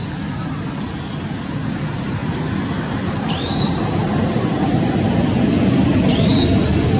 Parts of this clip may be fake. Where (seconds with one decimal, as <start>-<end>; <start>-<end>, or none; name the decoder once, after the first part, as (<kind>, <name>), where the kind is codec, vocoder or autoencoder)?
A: 2.2-4.8 (vocoder, BigVGAN v2)